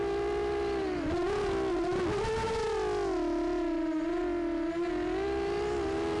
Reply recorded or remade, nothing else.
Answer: recorded